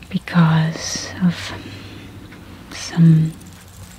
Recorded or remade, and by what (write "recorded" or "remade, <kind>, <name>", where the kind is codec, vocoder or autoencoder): recorded